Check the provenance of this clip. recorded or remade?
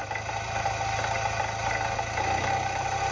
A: recorded